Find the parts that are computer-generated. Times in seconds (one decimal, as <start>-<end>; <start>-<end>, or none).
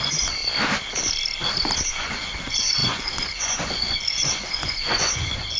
0.0-0.4; 1.9-5.6